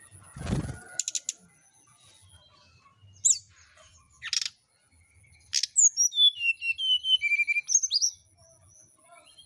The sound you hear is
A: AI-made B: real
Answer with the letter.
B